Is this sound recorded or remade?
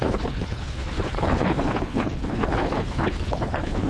remade